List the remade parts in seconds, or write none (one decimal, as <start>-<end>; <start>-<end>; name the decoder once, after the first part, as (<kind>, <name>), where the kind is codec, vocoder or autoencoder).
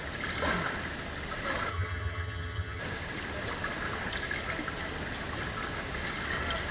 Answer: 1.7-2.8 (vocoder, HiFi-GAN)